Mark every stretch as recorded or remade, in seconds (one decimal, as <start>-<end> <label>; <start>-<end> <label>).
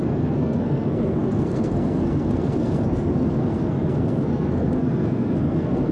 0.0-5.9 remade